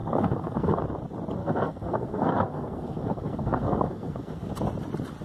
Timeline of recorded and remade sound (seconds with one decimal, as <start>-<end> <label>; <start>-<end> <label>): 0.0-0.8 remade; 0.8-1.4 recorded; 1.4-4.5 remade; 4.5-5.2 recorded